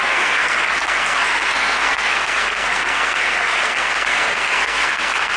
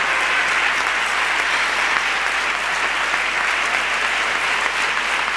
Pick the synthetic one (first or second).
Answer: first